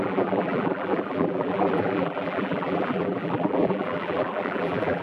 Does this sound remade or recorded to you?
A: remade